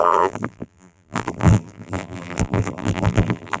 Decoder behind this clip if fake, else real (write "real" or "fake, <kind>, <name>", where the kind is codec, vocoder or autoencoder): fake, vocoder, BigVGAN v2